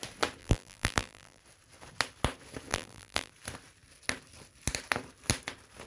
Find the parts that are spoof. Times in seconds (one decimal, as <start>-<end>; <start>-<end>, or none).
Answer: 0.4-1.4; 2.7-3.3